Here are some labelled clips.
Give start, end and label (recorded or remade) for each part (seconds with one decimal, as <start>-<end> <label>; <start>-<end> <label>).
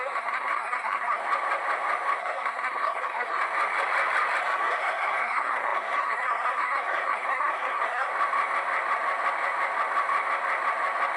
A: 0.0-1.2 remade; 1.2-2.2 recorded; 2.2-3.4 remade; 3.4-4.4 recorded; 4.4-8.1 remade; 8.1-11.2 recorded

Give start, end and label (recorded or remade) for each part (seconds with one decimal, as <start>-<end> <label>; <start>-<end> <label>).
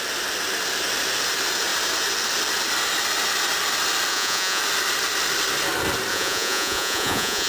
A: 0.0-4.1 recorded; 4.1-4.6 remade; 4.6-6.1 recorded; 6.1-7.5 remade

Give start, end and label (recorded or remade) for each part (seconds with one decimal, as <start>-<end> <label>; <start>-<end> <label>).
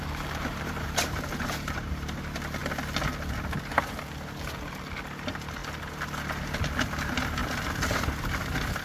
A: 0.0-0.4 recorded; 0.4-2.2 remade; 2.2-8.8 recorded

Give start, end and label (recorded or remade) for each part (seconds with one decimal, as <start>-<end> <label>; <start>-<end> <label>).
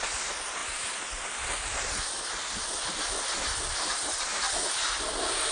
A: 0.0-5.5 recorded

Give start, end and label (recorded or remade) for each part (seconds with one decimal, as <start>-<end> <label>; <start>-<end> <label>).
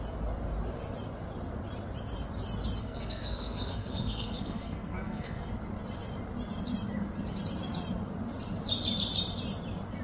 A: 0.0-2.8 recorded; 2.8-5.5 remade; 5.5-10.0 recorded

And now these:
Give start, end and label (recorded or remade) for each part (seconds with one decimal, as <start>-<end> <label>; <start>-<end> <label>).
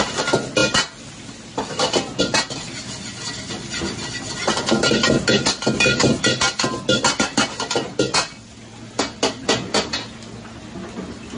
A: 0.0-11.4 recorded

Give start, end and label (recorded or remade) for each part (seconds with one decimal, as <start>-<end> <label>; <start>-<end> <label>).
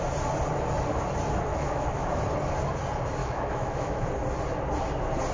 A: 0.0-1.5 recorded; 1.5-2.2 remade; 2.2-3.2 recorded; 3.2-4.1 remade; 4.1-5.3 recorded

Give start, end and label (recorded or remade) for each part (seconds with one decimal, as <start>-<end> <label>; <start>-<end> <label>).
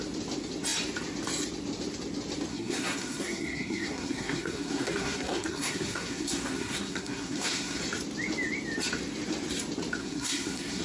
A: 0.0-2.5 recorded; 2.5-7.8 remade; 7.8-10.0 recorded; 10.0-10.8 remade